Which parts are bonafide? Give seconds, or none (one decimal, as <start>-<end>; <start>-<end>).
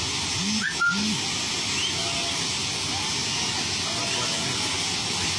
0.0-5.4